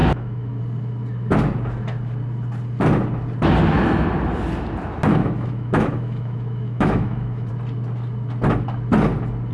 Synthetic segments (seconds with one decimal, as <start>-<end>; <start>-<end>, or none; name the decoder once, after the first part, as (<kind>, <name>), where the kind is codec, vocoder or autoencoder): 0.0-0.6 (autoencoder, DAC-VAE); 5.2-7.5